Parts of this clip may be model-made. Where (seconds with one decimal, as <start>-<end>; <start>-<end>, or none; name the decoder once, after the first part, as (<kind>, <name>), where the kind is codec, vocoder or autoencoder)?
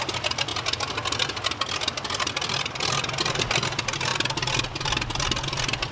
none